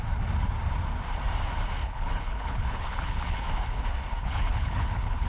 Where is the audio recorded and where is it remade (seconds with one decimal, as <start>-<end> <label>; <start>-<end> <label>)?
0.0-1.8 recorded; 1.8-3.8 remade; 3.8-4.2 recorded; 4.2-5.3 remade